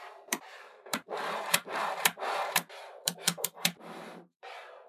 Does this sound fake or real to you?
fake